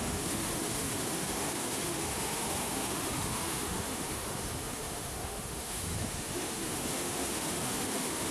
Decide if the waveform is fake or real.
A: fake